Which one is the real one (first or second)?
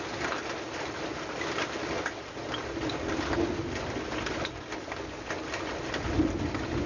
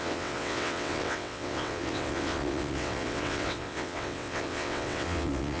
first